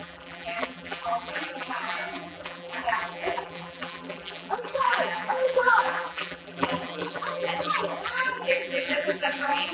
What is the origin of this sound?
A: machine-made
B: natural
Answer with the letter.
A